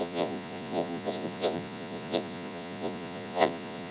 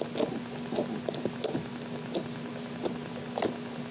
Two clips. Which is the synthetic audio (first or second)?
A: first